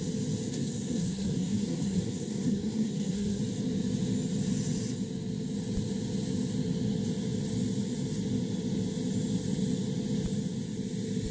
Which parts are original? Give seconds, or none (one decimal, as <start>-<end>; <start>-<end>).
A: 0.0-0.5; 3.4-11.3